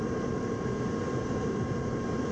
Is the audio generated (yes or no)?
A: yes